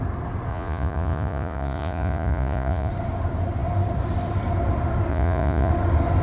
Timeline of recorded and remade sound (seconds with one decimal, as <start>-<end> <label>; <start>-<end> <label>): 0.0-0.5 recorded; 0.5-2.9 remade; 2.9-5.1 recorded; 5.1-5.7 remade; 5.7-6.2 recorded